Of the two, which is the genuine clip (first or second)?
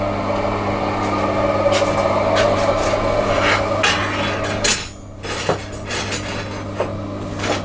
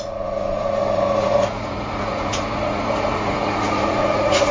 first